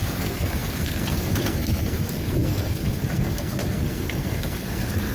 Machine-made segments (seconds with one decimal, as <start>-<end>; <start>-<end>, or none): 0.0-5.1